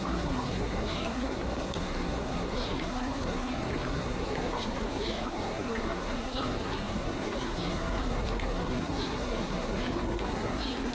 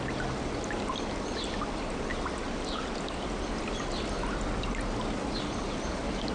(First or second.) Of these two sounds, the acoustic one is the second